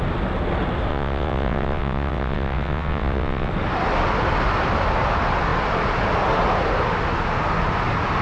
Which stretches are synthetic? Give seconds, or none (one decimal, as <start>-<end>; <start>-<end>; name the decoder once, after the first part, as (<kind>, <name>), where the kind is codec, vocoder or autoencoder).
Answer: 0.9-3.5 (vocoder, WaveNeXt)